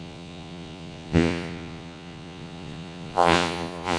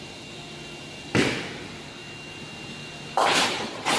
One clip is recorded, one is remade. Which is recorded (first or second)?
second